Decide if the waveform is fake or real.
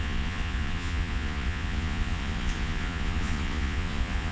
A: fake